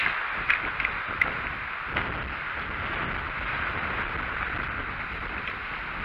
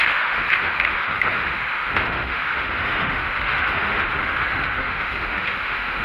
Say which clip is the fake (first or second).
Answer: second